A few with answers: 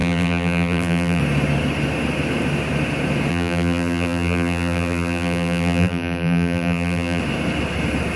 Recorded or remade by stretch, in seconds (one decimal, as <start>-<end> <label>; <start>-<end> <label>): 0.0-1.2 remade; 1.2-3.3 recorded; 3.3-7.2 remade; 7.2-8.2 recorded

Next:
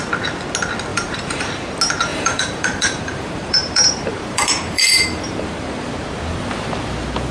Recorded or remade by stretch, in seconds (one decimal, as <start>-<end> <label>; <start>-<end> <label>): 0.0-0.9 recorded; 0.9-1.5 remade; 1.5-2.1 recorded; 2.1-5.9 remade; 5.9-7.3 recorded

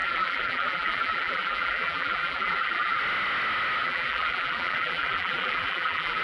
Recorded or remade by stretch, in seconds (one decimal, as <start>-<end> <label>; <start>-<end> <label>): 0.0-3.0 remade; 3.0-3.8 recorded; 3.8-6.2 remade